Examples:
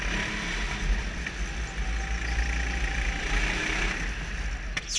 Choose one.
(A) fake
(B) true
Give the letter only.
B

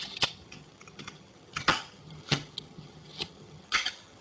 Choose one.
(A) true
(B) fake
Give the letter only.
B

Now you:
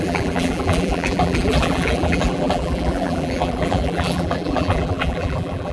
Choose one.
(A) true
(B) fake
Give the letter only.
B